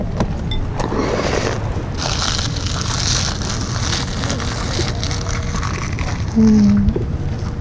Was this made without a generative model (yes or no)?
yes